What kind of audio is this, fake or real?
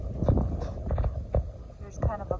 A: real